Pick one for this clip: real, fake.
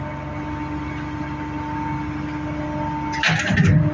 real